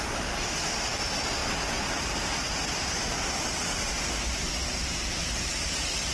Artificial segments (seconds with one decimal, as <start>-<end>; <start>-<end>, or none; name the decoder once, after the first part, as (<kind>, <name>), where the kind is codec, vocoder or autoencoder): none